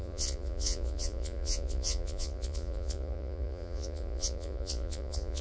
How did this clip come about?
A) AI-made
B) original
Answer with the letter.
A